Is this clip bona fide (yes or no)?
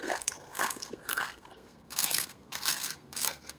no